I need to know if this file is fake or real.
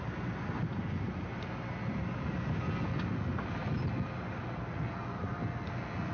real